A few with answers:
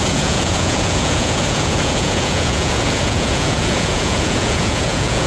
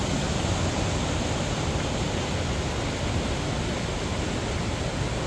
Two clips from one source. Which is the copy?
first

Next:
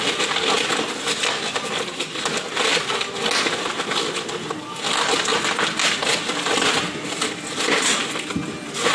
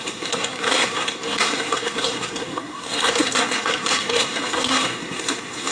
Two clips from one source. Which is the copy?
second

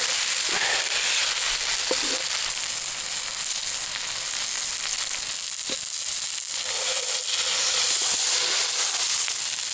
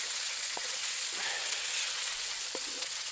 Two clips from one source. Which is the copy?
second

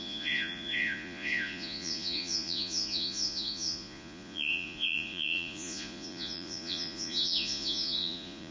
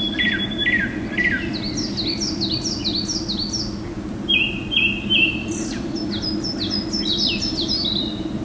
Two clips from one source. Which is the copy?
first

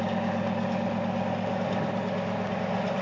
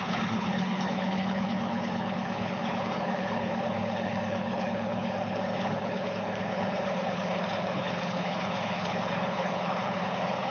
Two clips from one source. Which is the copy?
second